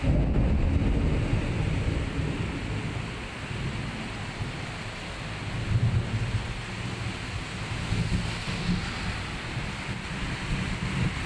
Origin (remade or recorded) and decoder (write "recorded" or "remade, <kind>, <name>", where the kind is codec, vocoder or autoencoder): recorded